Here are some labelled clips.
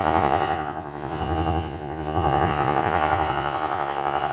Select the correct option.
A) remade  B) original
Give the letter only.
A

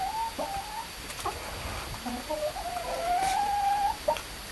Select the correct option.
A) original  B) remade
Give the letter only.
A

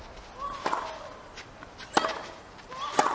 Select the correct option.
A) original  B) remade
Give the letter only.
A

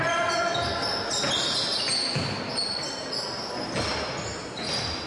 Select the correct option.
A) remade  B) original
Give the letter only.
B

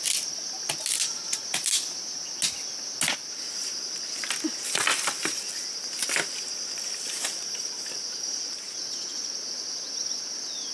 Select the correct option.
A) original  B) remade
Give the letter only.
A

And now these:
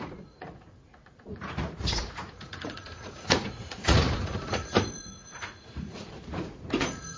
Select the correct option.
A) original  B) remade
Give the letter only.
B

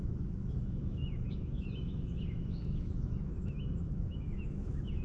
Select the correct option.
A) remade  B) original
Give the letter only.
A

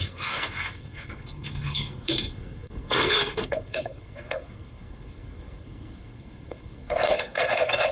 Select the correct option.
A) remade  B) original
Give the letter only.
A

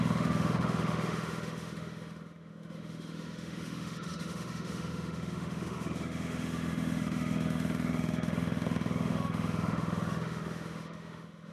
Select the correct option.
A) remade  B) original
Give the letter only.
A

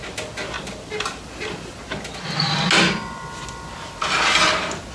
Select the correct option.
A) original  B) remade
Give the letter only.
A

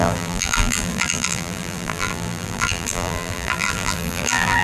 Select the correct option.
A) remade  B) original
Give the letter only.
A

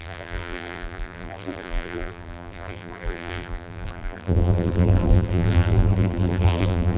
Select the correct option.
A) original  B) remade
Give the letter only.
B